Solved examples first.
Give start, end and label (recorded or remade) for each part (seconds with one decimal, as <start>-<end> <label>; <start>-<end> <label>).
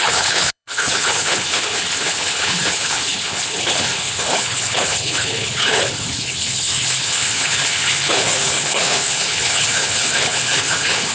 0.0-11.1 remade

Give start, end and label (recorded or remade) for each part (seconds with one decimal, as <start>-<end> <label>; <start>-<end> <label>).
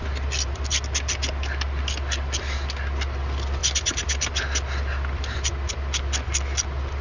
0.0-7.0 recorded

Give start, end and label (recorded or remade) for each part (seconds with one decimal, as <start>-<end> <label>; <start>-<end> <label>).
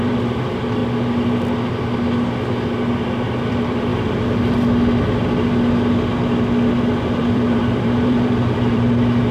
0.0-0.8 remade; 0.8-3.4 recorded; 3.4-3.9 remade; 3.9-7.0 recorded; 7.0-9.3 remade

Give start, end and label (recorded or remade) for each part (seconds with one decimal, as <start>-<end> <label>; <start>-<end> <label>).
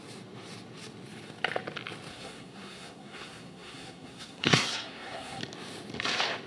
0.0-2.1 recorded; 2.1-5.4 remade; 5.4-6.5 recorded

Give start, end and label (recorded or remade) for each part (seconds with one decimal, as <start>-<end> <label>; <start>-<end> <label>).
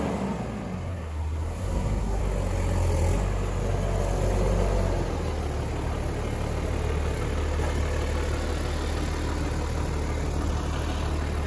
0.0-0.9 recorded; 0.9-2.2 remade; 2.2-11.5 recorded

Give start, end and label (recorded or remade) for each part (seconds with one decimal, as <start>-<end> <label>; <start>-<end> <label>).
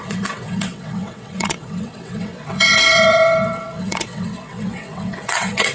0.0-5.7 remade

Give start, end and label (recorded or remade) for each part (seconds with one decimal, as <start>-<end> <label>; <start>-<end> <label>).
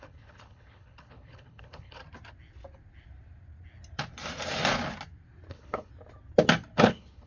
0.0-2.0 remade; 2.0-5.5 recorded; 5.5-5.9 remade; 5.9-6.8 recorded; 6.8-7.3 remade